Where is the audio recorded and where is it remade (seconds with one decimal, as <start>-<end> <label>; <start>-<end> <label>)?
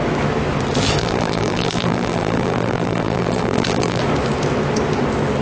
0.0-1.0 recorded; 1.0-4.0 remade; 4.0-5.4 recorded